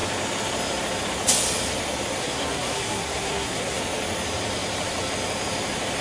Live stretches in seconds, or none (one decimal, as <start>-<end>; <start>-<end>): 0.0-2.2; 3.8-6.0